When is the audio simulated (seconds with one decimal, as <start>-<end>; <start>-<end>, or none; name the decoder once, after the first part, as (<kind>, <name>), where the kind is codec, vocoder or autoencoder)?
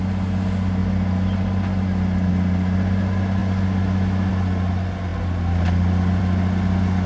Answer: none